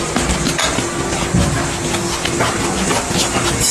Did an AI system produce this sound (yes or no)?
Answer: no